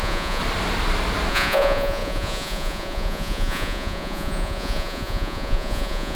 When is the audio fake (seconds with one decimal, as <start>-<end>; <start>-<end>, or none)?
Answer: 0.0-0.4; 1.3-6.1